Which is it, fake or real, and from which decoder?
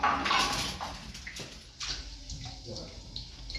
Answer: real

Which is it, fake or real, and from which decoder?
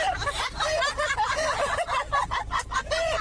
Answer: real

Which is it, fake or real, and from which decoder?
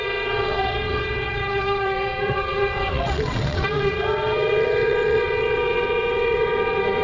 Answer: fake, vocoder, WaveNeXt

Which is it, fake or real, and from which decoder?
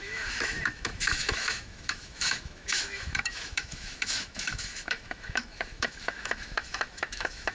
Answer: fake, autoencoder, DAC-VAE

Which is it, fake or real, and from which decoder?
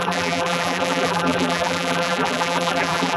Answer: fake, vocoder, BigVGAN v2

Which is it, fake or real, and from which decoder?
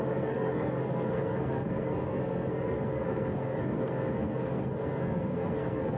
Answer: fake, codec, SNAC